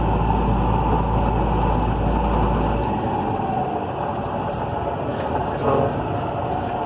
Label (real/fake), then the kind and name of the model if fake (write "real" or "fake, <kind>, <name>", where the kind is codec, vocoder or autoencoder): real